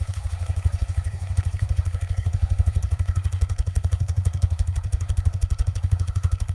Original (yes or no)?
no